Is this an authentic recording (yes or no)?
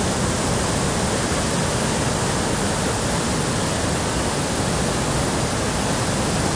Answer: yes